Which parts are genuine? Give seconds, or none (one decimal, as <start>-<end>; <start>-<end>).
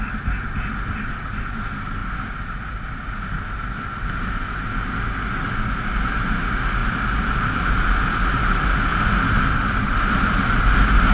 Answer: 0.0-6.8; 7.6-8.9; 10.6-11.1